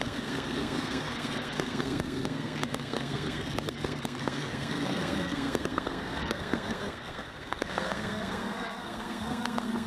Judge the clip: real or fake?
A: fake